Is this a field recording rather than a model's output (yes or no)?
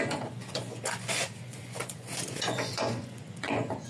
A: no